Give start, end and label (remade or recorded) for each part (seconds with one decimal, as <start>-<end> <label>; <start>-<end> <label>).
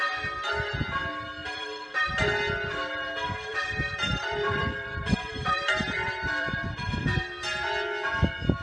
0.0-1.4 recorded; 1.4-2.1 remade; 2.1-3.5 recorded; 3.5-7.2 remade; 7.2-8.6 recorded